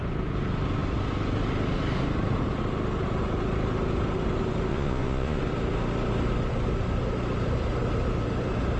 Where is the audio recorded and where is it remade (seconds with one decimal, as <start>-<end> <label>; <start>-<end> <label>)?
0.0-4.7 recorded; 4.7-5.4 remade; 5.4-8.8 recorded

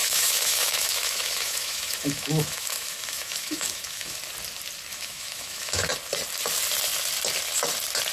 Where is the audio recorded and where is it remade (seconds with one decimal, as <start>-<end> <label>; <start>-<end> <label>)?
0.0-4.2 remade; 4.2-4.9 recorded; 4.9-5.9 remade; 5.9-8.1 recorded

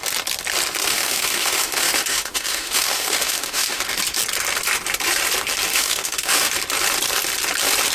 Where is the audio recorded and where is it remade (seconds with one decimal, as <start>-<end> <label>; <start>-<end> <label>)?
0.0-0.9 recorded; 0.9-3.8 remade; 3.8-5.7 recorded; 5.7-6.5 remade; 6.5-7.9 recorded